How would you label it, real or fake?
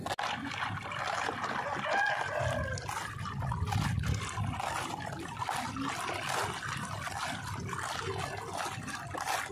real